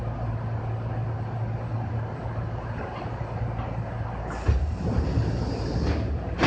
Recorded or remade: recorded